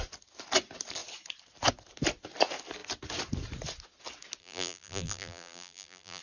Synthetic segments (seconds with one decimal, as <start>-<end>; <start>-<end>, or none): 4.4-6.2

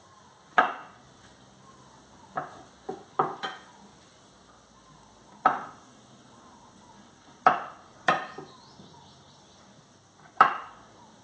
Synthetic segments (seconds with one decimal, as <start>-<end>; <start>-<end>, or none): 7.9-11.2

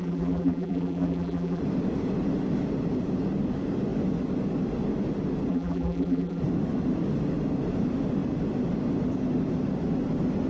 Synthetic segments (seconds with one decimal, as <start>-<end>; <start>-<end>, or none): 0.0-1.6; 5.5-6.4

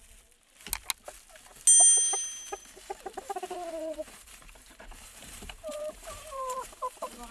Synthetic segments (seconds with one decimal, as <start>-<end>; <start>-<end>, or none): 2.6-7.3